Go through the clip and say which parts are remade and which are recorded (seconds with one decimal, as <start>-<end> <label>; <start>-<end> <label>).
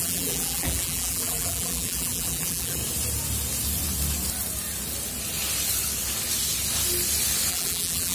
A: 0.0-2.8 remade; 2.8-7.5 recorded; 7.5-8.1 remade